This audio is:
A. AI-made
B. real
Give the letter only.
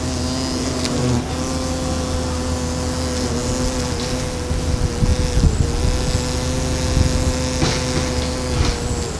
B